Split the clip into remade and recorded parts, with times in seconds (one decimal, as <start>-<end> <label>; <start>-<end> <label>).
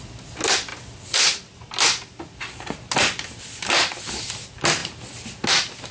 0.0-5.9 recorded